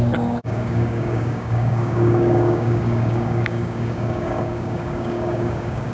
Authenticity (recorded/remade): remade